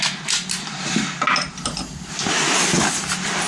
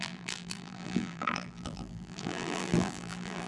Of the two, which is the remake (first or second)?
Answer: second